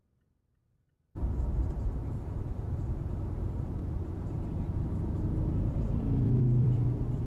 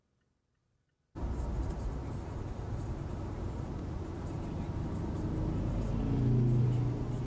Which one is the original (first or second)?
second